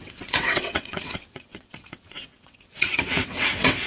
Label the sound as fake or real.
fake